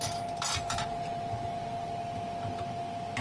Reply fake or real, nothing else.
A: real